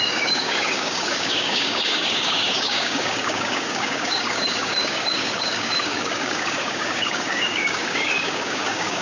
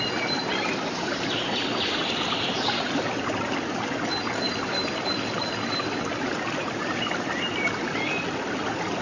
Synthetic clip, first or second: first